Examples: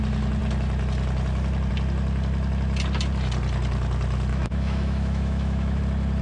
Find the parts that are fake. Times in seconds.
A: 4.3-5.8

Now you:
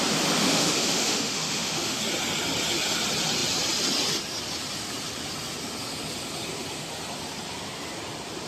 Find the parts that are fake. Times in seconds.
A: 0.4-2.0

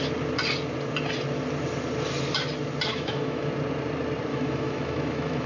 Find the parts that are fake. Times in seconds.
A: 2.9-3.5; 4.3-5.5